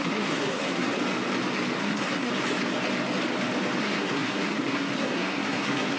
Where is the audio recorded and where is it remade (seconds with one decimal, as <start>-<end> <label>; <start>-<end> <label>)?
0.0-1.0 remade; 1.0-1.8 recorded; 1.8-2.3 remade; 2.3-3.8 recorded; 3.8-6.0 remade